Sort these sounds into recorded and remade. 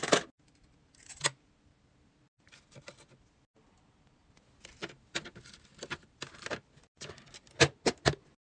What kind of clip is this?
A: recorded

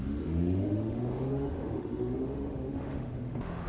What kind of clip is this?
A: remade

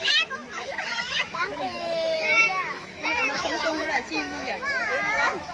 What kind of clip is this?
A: remade